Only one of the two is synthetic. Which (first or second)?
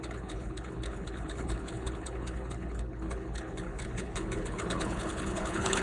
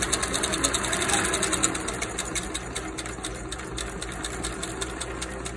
first